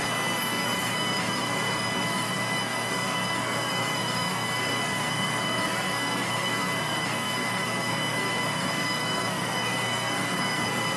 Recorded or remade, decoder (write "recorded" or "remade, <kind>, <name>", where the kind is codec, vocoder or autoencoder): remade, codec, SNAC